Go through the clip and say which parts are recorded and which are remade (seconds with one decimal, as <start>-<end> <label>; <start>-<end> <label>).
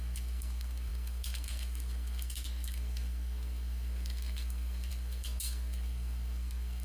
0.0-6.8 remade